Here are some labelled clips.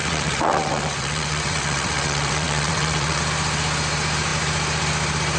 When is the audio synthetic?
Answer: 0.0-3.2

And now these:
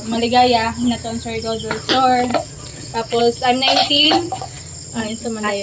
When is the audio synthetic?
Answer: 2.3-3.2; 3.8-4.6

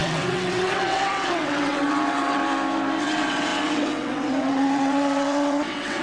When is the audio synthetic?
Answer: 0.0-2.4; 3.0-6.0

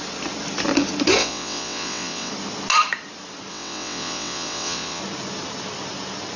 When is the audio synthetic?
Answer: 1.2-2.3; 3.5-5.0

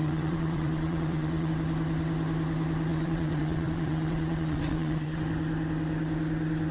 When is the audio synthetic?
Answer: 0.0-1.5; 2.9-5.2